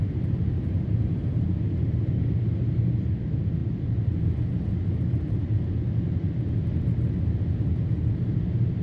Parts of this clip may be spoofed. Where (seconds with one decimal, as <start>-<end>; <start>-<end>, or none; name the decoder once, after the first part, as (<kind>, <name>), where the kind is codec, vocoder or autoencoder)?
none